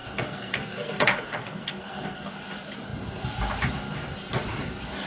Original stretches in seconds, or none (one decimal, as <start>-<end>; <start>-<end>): 2.3-5.1

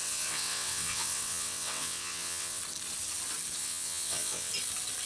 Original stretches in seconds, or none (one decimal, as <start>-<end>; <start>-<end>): 2.6-3.6; 4.5-5.1

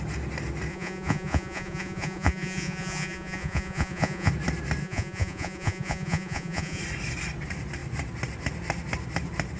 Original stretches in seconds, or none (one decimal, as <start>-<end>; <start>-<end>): 0.0-0.7; 4.3-4.8; 6.8-9.6

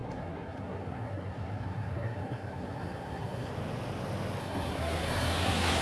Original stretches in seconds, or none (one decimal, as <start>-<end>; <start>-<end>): 3.5-4.4

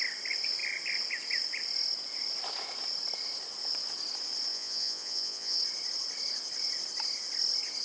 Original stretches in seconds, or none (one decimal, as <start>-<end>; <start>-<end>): 0.0-4.5; 5.6-7.8

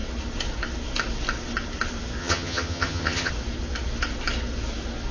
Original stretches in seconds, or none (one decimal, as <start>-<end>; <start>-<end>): 0.0-2.2; 3.3-5.1

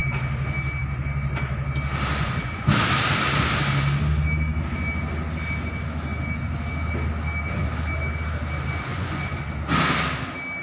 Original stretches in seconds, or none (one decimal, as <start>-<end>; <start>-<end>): 0.0-2.1; 2.7-8.9; 9.6-10.6

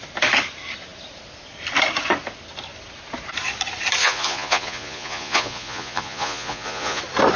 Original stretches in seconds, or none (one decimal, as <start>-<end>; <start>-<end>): 0.0-4.0; 7.0-7.4